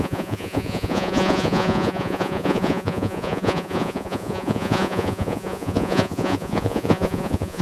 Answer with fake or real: fake